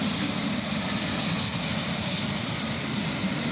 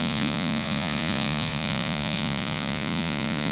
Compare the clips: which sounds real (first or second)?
first